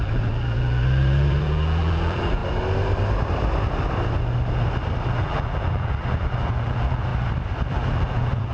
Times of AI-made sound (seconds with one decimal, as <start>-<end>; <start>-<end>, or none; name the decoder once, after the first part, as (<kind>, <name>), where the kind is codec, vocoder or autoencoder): 0.0-2.4 (vocoder, BigVGAN v2); 5.1-7.1; 7.7-8.5